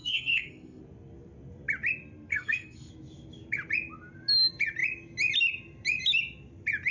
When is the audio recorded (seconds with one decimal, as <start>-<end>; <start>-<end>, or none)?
0.8-2.3; 2.9-6.9